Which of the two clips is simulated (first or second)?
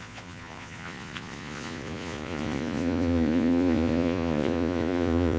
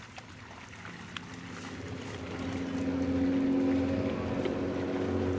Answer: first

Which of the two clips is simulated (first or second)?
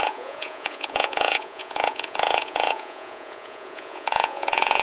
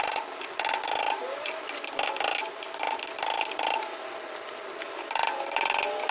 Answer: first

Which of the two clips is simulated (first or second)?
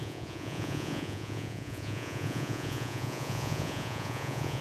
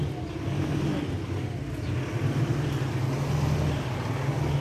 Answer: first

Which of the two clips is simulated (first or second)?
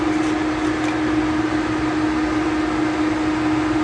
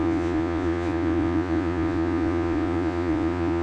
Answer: second